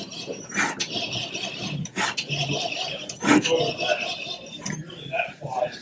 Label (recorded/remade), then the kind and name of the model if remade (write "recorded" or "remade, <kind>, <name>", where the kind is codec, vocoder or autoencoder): recorded